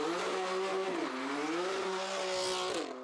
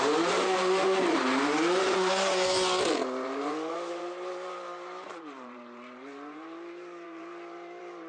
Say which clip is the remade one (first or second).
second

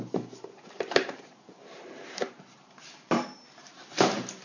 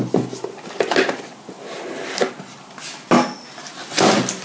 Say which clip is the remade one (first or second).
first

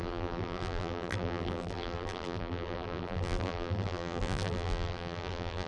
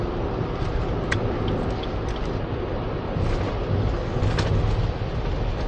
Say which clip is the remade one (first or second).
first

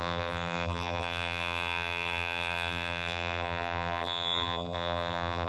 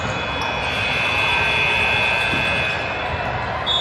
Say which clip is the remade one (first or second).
first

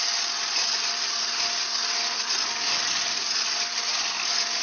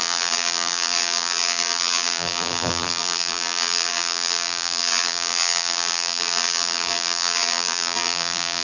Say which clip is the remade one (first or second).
second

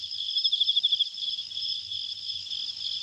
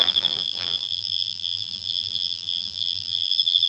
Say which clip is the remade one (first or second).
second